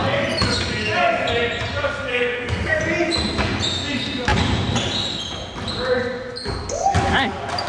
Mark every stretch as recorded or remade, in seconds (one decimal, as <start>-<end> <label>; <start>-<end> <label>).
0.0-2.1 recorded; 2.1-2.8 remade; 2.8-7.7 recorded